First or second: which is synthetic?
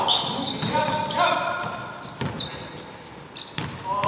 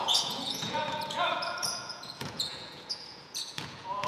second